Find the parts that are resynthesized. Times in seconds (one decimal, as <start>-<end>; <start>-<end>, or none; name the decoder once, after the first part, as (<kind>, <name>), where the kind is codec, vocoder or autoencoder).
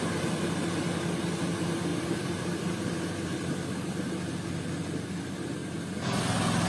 1.9-4.1 (vocoder, BigVGAN v2)